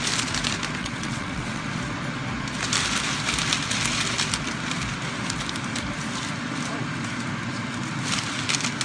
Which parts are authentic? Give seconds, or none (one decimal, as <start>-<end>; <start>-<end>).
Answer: 0.0-0.8; 1.6-8.8